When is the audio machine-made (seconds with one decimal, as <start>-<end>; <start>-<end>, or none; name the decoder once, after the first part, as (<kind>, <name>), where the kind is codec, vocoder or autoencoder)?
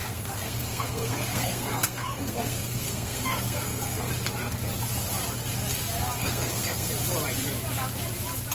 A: 0.0-4.1 (codec, SNAC); 6.2-6.9